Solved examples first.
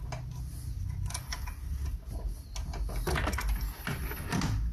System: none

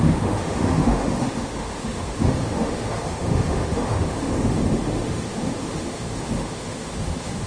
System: autoencoder, DAC-VAE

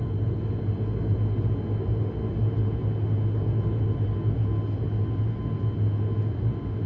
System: none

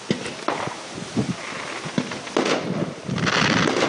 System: none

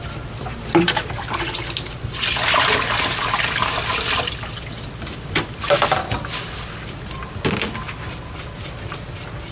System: none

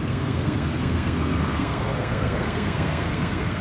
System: codec, SNAC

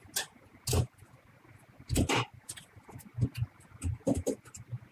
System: none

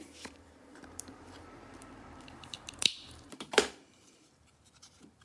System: vocoder, BigVGAN v2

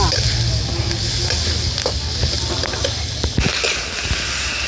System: none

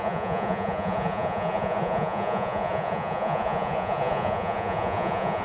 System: vocoder, Vocos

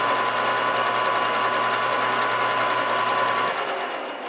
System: none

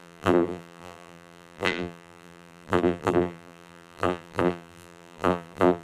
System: vocoder, BigVGAN v2